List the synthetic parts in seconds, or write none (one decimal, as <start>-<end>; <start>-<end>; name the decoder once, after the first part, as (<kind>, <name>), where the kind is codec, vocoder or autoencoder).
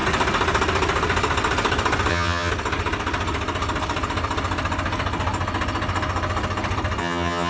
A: 2.1-2.5 (vocoder, HiFi-GAN); 7.0-7.5